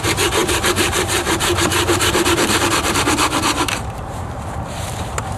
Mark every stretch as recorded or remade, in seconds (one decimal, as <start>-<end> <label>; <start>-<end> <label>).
0.0-5.4 remade